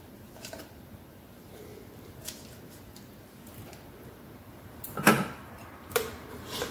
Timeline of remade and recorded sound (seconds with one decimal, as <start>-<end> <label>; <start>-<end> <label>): 0.0-1.7 remade; 1.7-3.2 recorded; 3.2-6.7 remade